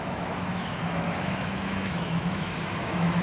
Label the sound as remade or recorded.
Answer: remade